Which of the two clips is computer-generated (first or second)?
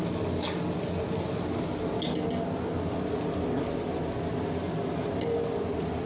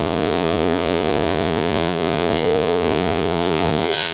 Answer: second